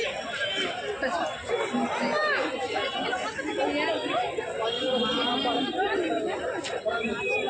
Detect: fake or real real